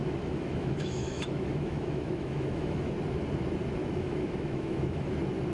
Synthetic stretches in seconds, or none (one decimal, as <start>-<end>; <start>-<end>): 0.0-2.9; 3.8-5.1